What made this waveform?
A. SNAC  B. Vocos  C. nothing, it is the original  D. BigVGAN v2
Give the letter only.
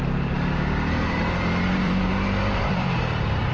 D